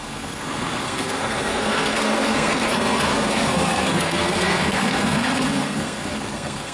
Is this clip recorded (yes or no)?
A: no